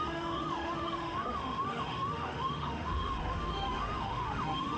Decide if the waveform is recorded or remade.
remade